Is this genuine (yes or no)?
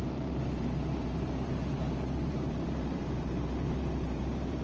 no